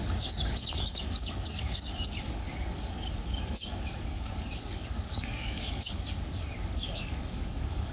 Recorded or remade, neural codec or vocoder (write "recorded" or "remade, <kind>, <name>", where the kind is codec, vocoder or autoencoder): remade, codec, DAC